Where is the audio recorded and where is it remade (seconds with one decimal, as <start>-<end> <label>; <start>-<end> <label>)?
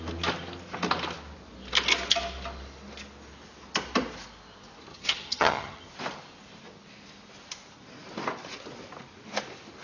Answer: 0.0-4.9 recorded; 4.9-5.9 remade; 5.9-9.8 recorded